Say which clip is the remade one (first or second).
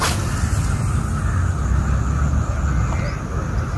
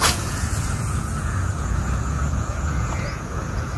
second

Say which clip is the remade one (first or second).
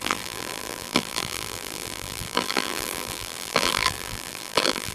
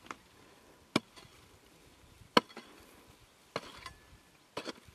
first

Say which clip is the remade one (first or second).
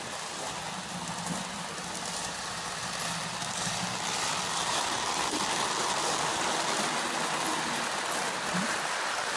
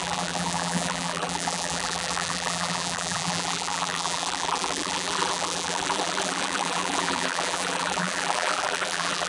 second